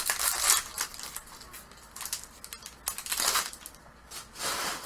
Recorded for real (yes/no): yes